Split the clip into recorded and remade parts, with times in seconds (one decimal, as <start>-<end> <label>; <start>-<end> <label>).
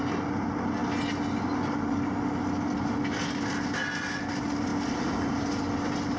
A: 0.0-6.2 recorded